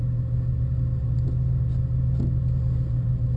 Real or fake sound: real